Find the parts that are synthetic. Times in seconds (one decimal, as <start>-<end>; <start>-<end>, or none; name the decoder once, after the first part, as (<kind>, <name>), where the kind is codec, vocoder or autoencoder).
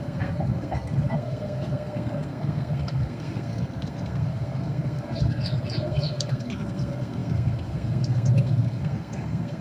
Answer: 0.0-9.6 (codec, SNAC)